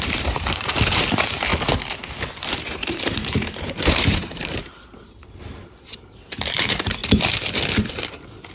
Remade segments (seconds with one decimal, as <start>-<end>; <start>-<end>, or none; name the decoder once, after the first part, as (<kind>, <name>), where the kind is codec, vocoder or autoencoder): 0.0-1.5 (vocoder, BigVGAN v2); 2.3-7.0; 7.9-8.5